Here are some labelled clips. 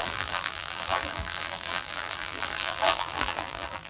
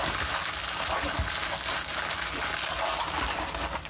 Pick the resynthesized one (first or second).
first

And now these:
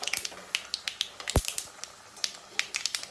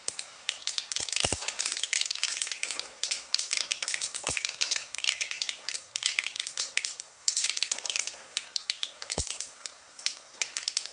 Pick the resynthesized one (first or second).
second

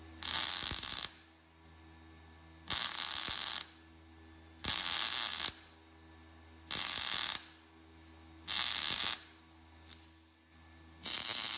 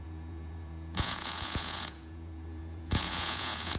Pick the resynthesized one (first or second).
second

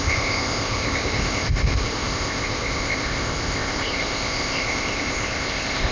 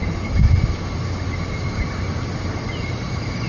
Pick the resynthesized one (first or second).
first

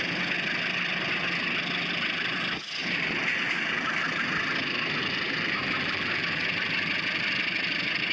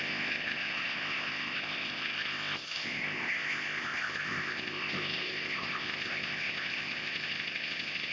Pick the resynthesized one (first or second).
second